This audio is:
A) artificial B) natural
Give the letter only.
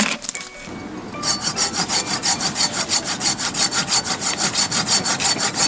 B